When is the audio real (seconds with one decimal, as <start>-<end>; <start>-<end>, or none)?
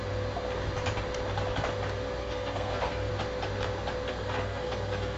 0.0-2.2; 3.1-4.1